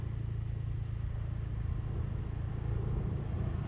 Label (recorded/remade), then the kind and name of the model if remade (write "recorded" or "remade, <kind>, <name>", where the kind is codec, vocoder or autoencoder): recorded